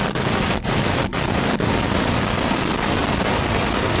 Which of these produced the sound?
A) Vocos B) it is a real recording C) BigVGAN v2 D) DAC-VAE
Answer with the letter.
B